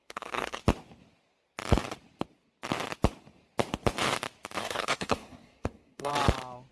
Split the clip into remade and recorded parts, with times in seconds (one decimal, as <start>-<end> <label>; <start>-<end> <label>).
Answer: 0.0-0.6 remade; 0.6-4.6 recorded; 4.6-6.1 remade; 6.1-6.7 recorded